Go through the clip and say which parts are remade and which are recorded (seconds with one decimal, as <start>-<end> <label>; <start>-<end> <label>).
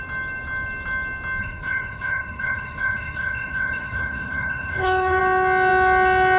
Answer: 0.0-1.4 recorded; 1.4-5.2 remade; 5.2-6.4 recorded